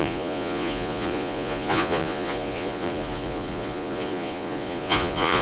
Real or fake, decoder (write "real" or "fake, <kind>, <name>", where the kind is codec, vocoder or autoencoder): fake, vocoder, Vocos